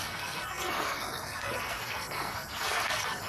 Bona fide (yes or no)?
no